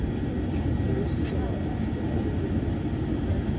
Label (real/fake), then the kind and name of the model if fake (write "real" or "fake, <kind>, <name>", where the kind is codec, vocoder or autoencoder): real